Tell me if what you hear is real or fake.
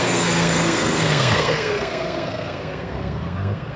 fake